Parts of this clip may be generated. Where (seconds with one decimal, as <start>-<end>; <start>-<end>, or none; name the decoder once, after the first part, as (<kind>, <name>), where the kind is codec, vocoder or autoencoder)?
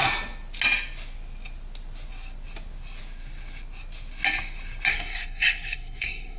4.9-6.4 (codec, SNAC)